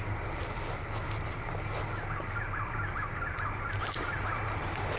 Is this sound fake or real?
real